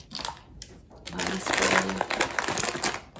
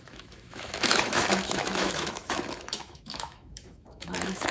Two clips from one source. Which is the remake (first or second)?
second